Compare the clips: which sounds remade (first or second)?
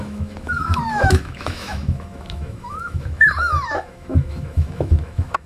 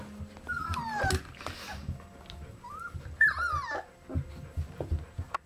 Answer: first